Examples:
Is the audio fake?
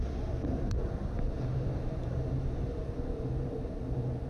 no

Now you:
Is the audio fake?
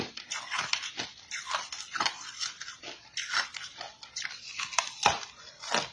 yes